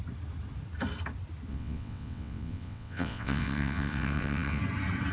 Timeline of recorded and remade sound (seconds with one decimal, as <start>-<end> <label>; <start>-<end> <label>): 0.0-1.5 recorded; 1.5-4.6 remade; 4.6-5.1 recorded